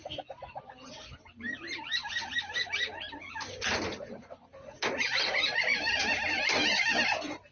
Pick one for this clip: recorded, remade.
recorded